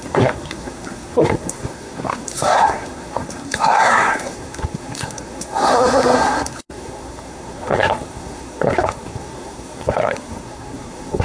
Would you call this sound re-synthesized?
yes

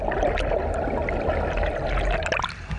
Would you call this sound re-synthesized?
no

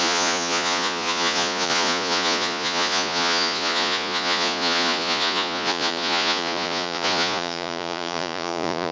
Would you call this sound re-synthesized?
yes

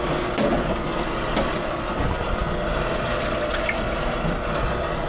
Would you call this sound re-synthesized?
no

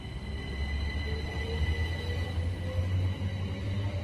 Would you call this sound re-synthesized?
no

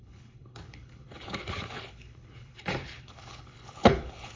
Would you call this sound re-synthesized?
yes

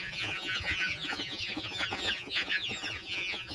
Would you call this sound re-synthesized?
yes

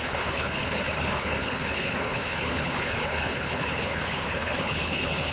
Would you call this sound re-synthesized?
yes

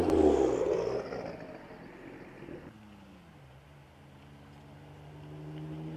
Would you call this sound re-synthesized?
no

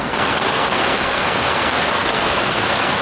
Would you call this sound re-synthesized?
yes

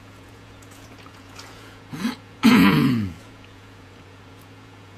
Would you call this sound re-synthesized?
yes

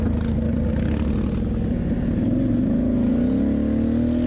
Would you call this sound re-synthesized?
no